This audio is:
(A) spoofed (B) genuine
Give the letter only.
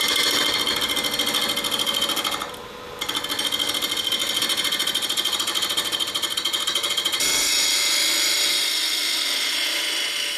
B